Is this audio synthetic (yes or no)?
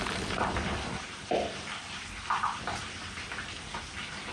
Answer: no